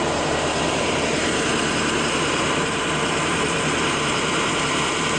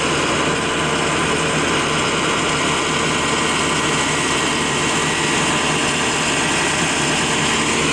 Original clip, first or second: second